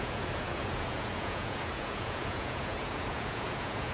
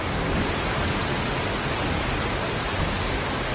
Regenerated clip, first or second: first